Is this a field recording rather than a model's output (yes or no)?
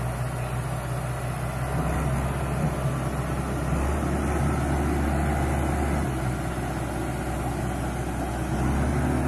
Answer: yes